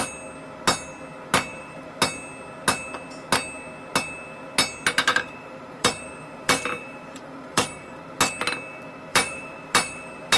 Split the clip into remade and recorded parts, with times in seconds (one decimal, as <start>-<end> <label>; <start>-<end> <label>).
0.0-1.5 recorded; 1.5-2.0 remade; 2.0-5.1 recorded; 5.1-8.1 remade; 8.1-9.1 recorded; 9.1-10.4 remade